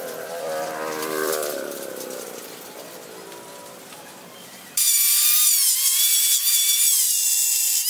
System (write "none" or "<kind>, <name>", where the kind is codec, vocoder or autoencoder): vocoder, BigVGAN v2